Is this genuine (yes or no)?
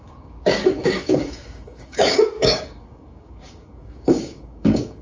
no